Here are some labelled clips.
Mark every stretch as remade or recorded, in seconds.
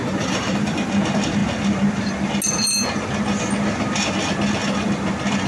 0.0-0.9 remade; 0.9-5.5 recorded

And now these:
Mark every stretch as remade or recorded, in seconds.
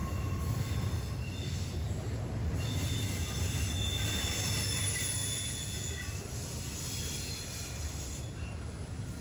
0.0-5.2 recorded; 5.2-5.9 remade; 5.9-9.2 recorded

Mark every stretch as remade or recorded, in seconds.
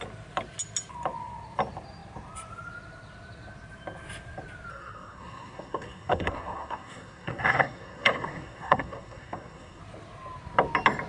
0.0-4.7 recorded; 4.7-9.8 remade; 9.8-11.1 recorded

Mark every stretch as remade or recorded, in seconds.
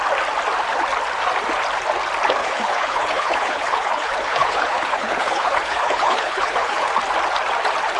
0.0-2.4 recorded; 2.4-6.9 remade; 6.9-8.0 recorded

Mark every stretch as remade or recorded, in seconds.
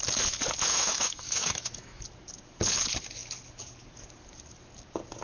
0.0-0.7 recorded; 0.7-2.0 remade; 2.0-5.2 recorded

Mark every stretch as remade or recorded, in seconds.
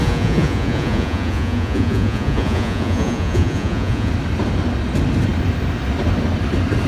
0.0-4.1 remade; 4.1-6.9 recorded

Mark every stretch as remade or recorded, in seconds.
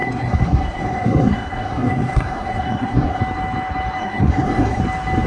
0.0-3.2 remade; 3.2-4.0 recorded; 4.0-4.8 remade; 4.8-5.3 recorded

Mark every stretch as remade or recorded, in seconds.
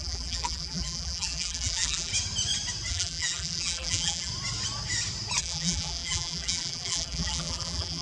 0.0-2.1 remade; 2.1-2.9 recorded; 2.9-4.3 remade; 4.3-5.4 recorded; 5.4-8.0 remade